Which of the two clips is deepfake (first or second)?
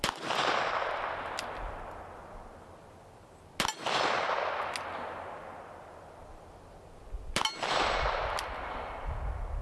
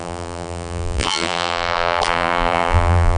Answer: second